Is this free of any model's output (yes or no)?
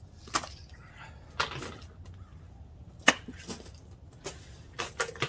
yes